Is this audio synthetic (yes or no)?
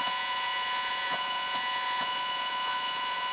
yes